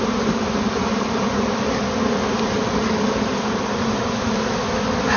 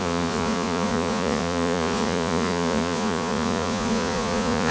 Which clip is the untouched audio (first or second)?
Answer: first